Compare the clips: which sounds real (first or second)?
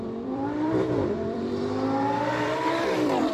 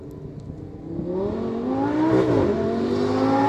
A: second